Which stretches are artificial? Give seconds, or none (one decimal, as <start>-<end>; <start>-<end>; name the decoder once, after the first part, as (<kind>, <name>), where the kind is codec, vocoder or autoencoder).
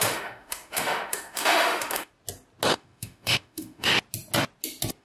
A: 0.0-2.1 (autoencoder, DAC-VAE); 2.7-3.9